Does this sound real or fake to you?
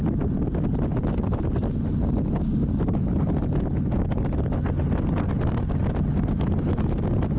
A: real